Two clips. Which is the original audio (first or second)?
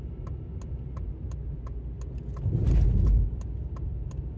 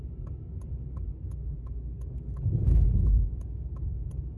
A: first